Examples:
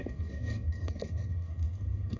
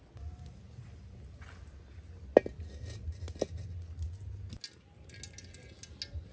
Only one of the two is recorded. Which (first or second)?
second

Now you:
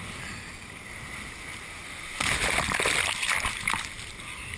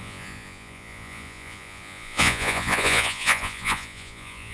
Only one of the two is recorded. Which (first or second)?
first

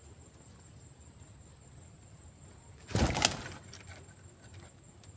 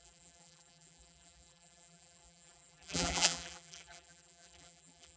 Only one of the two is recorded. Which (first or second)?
first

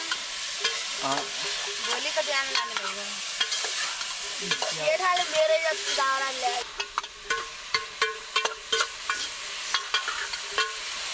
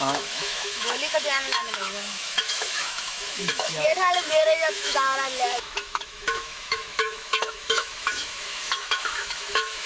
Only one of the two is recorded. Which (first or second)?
first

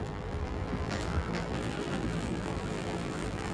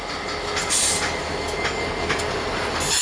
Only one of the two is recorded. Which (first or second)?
second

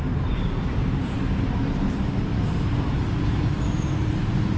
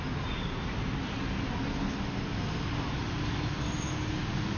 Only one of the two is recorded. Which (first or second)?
second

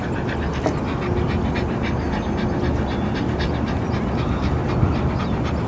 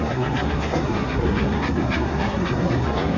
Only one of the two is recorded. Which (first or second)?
first